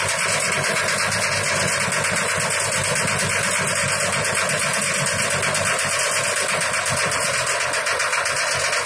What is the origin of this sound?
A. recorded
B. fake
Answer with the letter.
A